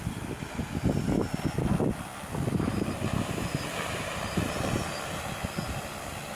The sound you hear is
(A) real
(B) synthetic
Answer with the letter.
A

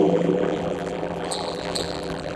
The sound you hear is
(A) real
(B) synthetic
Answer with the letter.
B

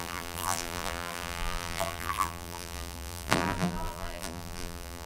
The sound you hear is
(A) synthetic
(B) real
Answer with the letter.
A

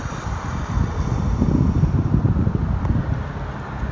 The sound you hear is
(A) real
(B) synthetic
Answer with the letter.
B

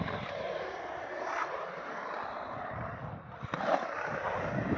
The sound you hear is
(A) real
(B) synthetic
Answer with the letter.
B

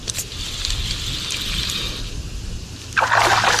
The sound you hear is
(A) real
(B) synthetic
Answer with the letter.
A